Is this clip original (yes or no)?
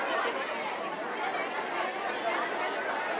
yes